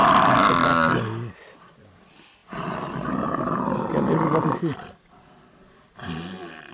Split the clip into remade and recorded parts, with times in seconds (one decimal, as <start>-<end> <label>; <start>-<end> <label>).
0.0-0.5 recorded; 0.5-6.7 remade